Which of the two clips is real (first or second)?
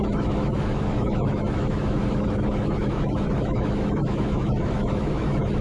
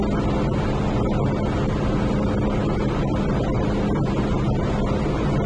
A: second